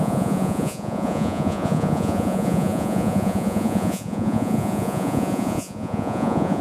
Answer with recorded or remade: remade